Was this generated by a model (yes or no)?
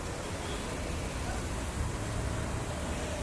no